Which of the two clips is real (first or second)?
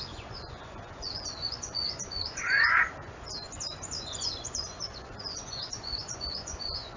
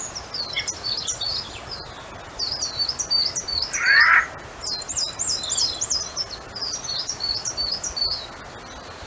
second